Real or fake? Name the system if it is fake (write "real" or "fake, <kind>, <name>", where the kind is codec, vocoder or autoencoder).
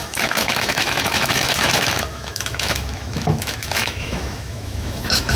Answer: fake, autoencoder, DAC-VAE